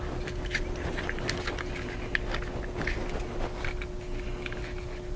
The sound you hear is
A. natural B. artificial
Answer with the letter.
A